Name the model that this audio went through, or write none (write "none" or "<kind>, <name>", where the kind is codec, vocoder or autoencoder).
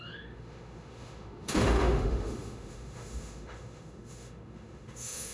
autoencoder, DAC-VAE